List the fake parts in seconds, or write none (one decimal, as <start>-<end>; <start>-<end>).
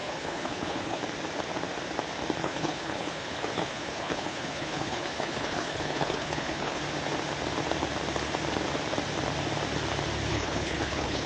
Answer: 0.0-1.0; 2.4-6.8; 10.3-11.3